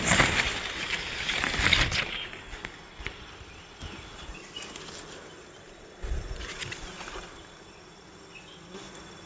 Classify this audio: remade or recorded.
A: recorded